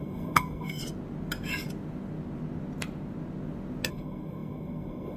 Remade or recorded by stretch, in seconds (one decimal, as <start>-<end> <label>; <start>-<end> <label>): 0.0-0.8 remade; 0.8-3.9 recorded; 3.9-5.2 remade